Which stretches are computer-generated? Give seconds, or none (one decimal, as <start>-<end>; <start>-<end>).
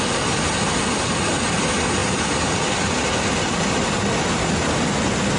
none